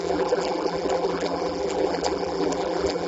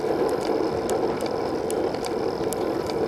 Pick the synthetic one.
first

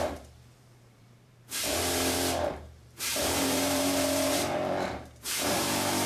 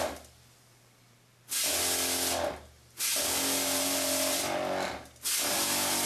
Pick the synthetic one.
first